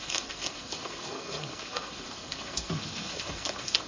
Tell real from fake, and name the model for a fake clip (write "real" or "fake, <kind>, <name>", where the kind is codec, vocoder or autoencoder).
fake, codec, SNAC